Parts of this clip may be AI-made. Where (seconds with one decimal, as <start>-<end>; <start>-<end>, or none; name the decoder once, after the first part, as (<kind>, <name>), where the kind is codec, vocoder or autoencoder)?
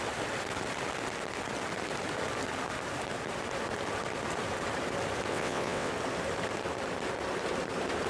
5.3-5.9 (vocoder, WaveNeXt)